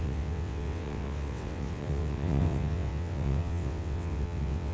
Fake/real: fake